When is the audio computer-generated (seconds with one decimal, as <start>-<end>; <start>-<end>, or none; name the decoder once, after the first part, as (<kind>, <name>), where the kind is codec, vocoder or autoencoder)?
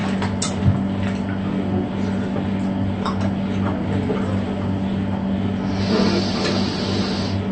none